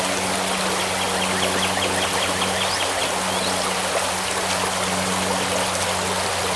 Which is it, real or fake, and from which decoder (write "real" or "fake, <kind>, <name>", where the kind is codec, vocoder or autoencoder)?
real